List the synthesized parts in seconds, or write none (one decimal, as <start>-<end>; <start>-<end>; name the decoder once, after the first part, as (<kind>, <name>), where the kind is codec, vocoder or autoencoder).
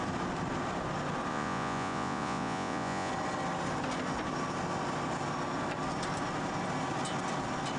1.3-3.1 (vocoder, Vocos)